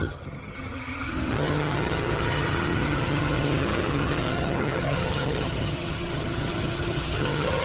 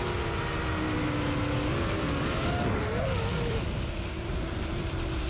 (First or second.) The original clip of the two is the second